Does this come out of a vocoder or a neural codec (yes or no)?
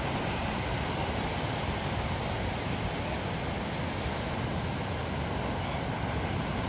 no